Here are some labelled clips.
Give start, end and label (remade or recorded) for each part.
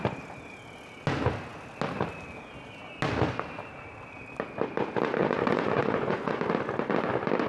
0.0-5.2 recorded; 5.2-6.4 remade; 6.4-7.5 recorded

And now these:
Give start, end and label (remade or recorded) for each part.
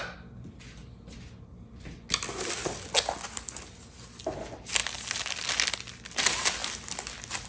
0.0-7.5 recorded